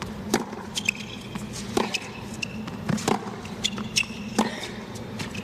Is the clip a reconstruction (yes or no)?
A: no